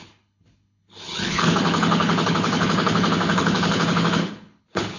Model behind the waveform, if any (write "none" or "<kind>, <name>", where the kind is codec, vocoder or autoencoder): codec, HILCodec